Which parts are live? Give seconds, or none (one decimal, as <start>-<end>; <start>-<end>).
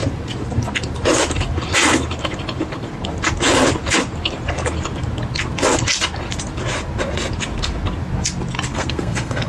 0.0-8.7